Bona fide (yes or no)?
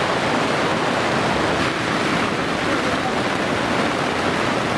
yes